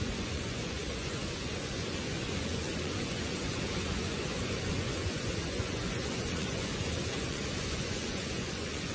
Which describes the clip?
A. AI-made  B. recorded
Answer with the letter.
A